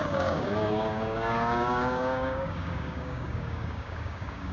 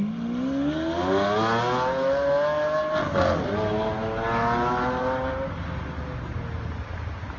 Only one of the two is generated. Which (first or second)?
first